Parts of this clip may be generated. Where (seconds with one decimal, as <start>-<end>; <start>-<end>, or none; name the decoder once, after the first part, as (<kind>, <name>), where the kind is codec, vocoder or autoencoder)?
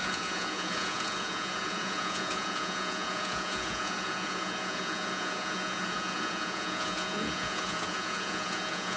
0.0-9.0 (vocoder, Vocos)